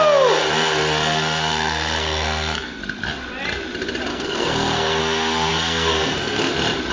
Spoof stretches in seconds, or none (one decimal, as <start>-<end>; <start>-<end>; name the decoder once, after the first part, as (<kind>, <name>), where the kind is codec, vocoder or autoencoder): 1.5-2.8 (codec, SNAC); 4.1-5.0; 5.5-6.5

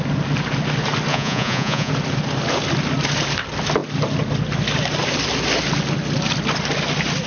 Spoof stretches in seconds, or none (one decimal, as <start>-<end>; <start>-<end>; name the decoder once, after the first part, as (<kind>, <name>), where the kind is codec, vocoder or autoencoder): 1.1-1.9 (vocoder, Vocos)

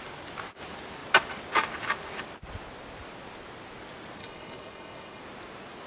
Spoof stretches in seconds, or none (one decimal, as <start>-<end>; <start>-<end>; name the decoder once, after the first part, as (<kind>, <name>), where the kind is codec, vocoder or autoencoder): 4.2-5.2 (codec, HILCodec)